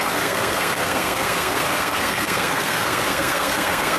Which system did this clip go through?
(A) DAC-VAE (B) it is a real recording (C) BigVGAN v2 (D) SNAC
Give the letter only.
D